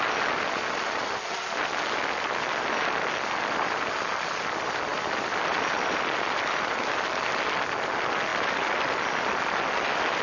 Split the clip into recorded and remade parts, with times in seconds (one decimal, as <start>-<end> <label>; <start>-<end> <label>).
0.0-4.9 recorded; 4.9-6.9 remade; 6.9-8.3 recorded; 8.3-10.2 remade